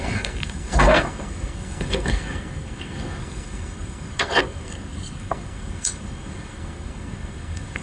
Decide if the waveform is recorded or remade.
remade